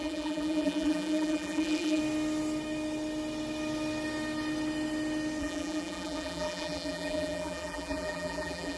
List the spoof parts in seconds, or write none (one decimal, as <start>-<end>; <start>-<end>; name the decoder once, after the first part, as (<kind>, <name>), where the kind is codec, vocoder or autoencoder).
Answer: 0.0-2.0 (vocoder, BigVGAN v2); 5.4-8.8